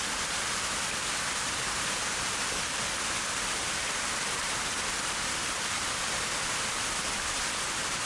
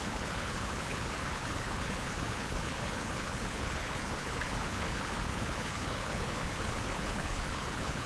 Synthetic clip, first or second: second